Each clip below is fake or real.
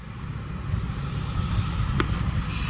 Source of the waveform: real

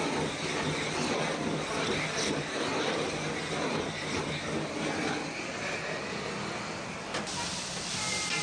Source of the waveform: real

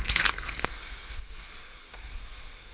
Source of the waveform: fake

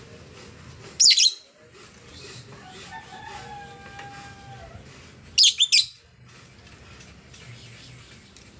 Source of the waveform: real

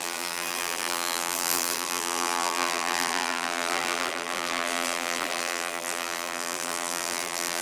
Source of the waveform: fake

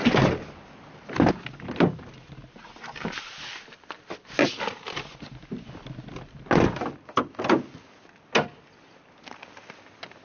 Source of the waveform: real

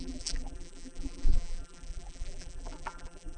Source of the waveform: fake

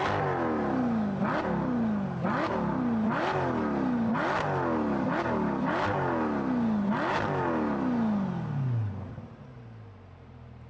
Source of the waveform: real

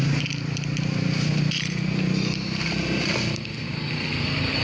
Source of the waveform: real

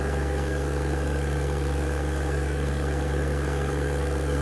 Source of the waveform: fake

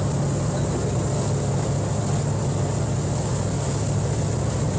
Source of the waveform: real